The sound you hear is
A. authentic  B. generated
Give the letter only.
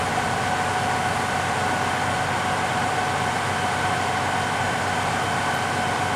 A